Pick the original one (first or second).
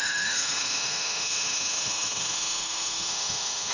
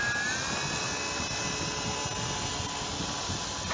second